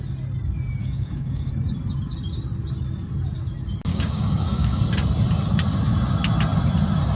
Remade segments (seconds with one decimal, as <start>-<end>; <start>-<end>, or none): 0.8-1.5; 3.9-4.8